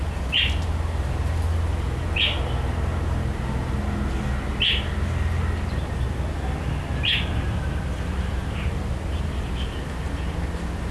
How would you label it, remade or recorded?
recorded